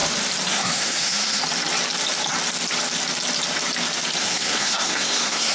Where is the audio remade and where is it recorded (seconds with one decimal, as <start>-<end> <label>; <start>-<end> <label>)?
0.0-0.5 recorded; 0.5-1.4 remade; 1.4-4.2 recorded; 4.2-5.5 remade